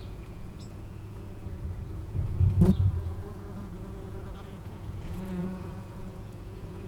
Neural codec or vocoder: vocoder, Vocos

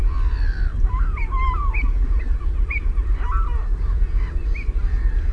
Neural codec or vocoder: none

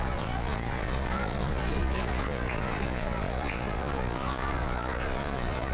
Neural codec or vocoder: vocoder, Vocos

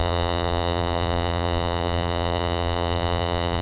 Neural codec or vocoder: vocoder, BigVGAN v2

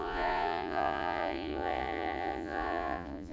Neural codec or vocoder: vocoder, Vocos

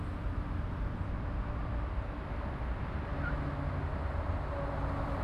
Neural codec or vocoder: none